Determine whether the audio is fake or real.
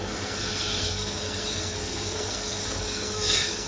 fake